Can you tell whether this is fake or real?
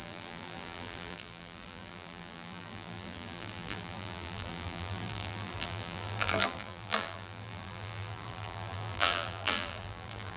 fake